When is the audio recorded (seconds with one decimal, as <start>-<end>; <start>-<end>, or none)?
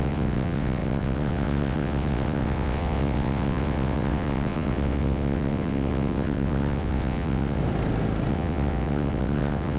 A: 7.6-8.3